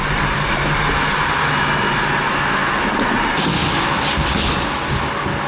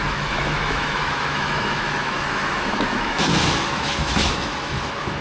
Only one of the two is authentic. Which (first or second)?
first